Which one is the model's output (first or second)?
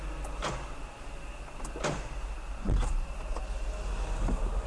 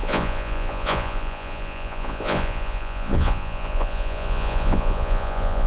second